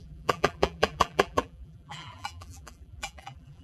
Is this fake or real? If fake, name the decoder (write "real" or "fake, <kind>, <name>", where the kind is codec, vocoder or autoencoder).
fake, vocoder, BigVGAN v2